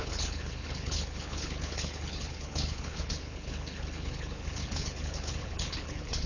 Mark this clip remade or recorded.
remade